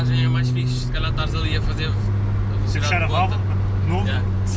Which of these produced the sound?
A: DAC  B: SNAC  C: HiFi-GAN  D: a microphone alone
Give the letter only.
D